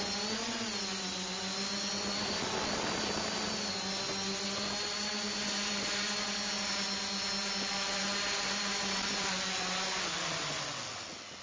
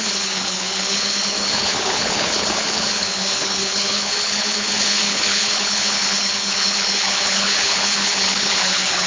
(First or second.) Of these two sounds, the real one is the first